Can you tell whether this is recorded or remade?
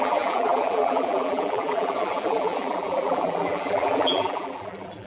remade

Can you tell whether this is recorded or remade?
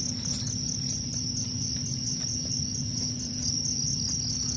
recorded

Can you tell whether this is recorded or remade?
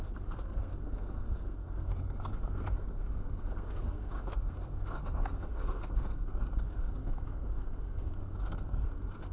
remade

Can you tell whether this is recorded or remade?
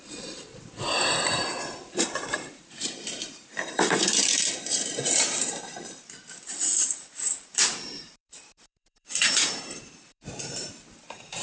remade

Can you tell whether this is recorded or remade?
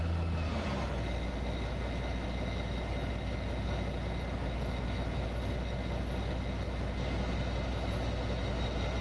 recorded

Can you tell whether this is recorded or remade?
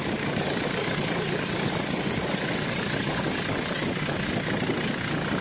recorded